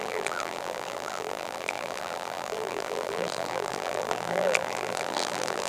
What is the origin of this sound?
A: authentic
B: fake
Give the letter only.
B